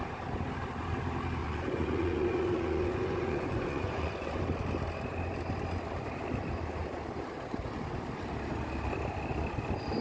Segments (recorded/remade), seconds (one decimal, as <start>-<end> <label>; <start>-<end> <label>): 0.0-1.4 recorded; 1.4-4.4 remade; 4.4-10.0 recorded